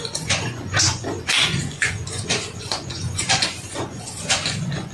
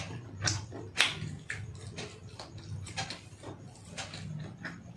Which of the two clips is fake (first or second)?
first